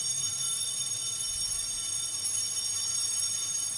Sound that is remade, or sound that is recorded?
recorded